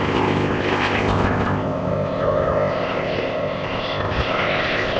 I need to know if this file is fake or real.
fake